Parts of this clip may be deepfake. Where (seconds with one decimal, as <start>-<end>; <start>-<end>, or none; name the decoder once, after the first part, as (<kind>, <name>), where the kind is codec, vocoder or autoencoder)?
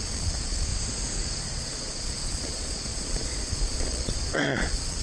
0.0-0.7 (vocoder, Vocos); 1.4-5.0